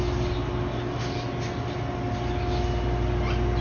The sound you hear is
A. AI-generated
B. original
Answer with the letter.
B